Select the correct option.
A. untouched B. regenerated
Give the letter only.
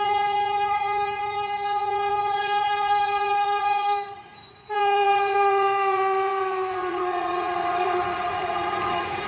B